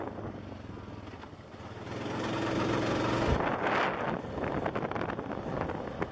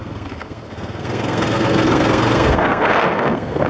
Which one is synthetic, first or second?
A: second